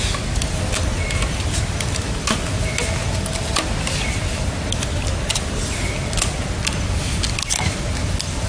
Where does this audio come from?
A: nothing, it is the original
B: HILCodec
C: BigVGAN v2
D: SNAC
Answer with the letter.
A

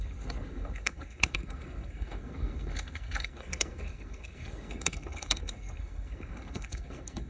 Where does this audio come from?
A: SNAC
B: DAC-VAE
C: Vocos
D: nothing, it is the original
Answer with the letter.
A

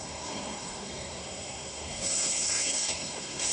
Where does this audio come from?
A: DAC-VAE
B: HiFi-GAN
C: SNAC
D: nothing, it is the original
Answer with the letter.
C